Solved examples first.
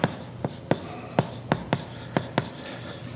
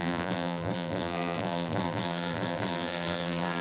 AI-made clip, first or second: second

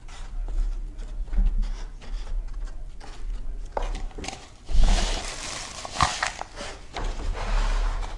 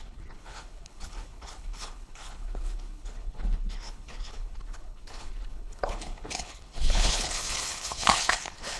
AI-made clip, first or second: second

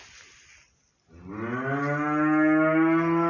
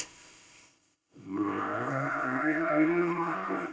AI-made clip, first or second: second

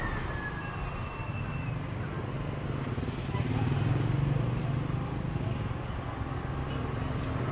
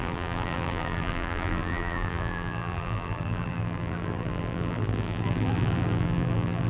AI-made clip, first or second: second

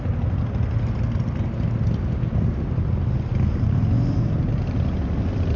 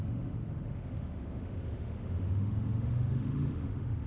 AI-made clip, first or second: second